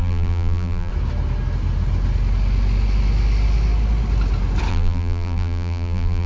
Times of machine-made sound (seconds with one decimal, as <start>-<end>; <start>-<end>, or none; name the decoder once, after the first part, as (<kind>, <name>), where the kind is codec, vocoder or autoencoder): 0.0-0.9 (vocoder, BigVGAN v2); 4.7-6.3